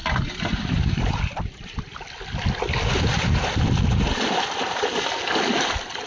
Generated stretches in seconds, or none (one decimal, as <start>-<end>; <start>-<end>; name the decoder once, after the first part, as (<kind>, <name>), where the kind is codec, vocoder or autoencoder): 0.0-1.4 (vocoder, BigVGAN v2)